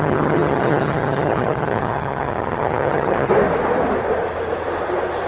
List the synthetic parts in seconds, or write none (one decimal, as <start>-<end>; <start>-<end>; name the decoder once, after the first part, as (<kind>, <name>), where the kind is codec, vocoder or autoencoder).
0.0-3.3 (vocoder, HiFi-GAN)

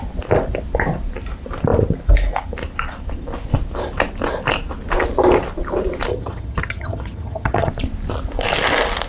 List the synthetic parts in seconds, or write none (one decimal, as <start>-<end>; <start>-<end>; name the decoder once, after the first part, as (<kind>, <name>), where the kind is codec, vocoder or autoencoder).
6.1-7.7 (vocoder, HiFi-GAN)

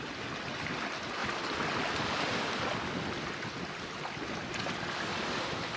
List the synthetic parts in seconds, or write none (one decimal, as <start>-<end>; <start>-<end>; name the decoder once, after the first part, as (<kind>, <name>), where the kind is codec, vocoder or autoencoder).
none

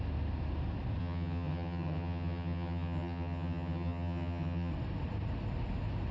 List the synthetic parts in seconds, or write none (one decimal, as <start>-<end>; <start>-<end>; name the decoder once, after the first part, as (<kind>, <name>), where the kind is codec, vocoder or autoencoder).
1.0-4.7 (vocoder, HiFi-GAN)

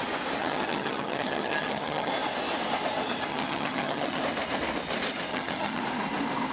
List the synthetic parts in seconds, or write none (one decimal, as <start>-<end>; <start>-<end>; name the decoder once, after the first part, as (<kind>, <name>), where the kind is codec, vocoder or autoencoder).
0.4-2.1 (vocoder, HiFi-GAN); 3.3-4.2; 5.3-5.8

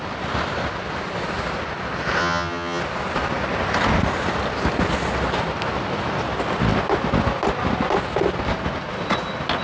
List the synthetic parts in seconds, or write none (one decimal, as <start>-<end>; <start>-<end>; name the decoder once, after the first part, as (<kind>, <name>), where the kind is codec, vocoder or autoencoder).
2.2-2.8 (vocoder, HiFi-GAN)

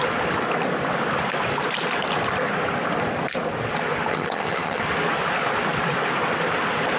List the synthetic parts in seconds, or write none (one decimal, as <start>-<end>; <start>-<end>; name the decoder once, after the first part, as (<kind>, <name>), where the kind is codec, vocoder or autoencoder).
4.1-4.8 (vocoder, HiFi-GAN)